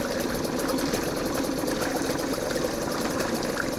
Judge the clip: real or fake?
fake